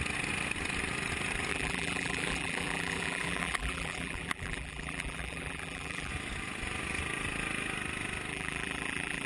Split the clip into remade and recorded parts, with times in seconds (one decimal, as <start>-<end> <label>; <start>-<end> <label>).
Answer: 0.0-1.5 recorded; 1.5-6.1 remade; 6.1-8.3 recorded; 8.3-9.3 remade